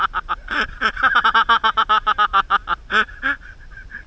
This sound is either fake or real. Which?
real